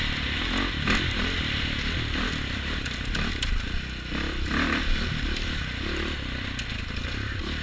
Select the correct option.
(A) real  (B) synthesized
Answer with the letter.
A